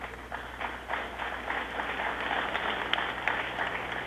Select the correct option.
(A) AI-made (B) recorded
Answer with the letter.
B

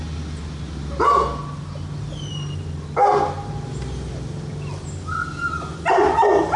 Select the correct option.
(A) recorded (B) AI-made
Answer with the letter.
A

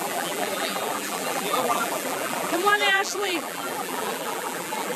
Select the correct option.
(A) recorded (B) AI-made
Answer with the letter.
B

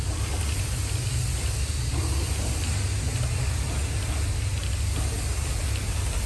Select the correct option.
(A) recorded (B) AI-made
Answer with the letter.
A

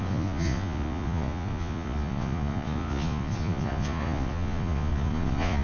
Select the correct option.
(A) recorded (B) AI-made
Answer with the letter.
B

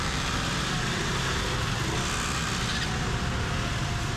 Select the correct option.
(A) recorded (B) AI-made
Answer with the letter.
A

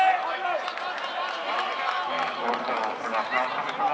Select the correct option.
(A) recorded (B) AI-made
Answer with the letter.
A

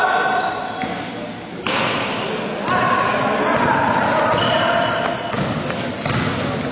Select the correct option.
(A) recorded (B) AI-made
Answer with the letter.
A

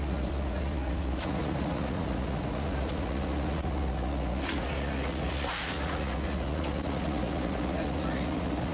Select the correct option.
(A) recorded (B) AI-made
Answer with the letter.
B